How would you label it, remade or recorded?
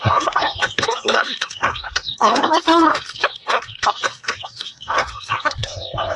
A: remade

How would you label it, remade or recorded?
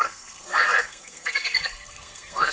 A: remade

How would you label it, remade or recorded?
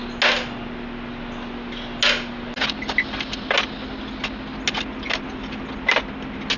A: recorded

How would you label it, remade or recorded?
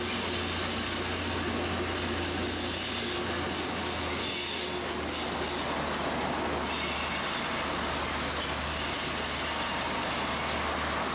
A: recorded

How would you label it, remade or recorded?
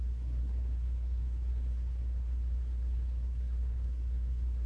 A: remade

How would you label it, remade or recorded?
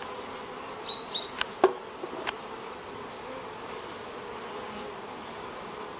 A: recorded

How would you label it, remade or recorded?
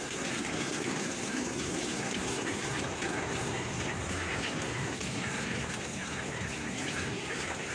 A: remade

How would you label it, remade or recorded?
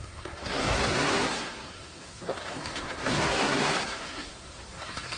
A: remade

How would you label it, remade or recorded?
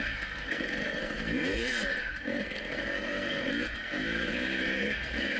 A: remade